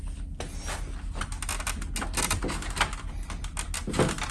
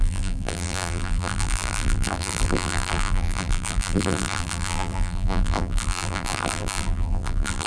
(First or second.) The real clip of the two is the first